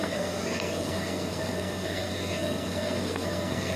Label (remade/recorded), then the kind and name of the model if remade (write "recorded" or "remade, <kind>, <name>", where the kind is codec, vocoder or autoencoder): remade, codec, SNAC